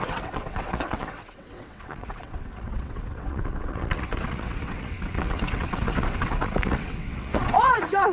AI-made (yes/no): yes